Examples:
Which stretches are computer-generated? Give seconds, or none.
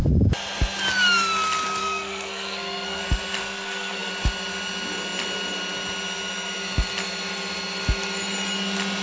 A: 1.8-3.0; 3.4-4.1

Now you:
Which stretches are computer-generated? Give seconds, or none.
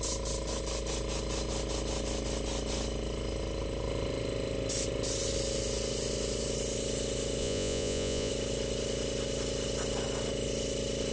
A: 7.4-8.3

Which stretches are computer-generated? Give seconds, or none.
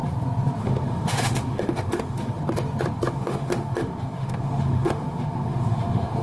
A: 0.6-2.4; 3.1-6.2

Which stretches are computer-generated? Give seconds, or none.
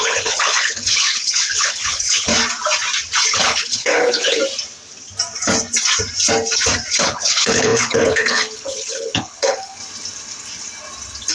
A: 0.0-2.3; 3.3-4.4; 7.0-9.8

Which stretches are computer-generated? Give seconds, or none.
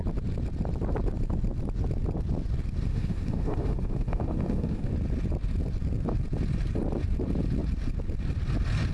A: 2.9-4.9